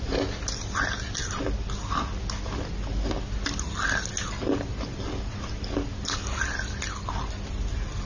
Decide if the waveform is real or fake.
real